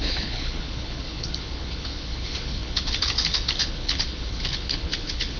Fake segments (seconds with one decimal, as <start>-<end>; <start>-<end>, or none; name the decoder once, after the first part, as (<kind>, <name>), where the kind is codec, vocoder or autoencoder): 0.0-5.4 (codec, HILCodec)